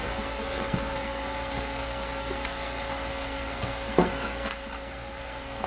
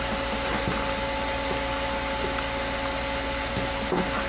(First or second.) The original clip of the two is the second